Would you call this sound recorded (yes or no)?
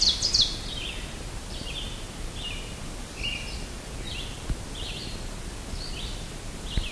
yes